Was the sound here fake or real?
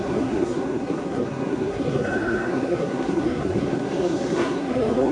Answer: fake